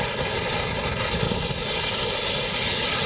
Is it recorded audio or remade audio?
recorded